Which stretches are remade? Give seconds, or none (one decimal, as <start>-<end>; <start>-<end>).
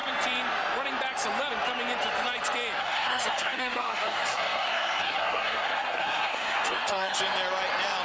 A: 2.8-7.2